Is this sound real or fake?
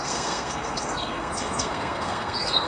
fake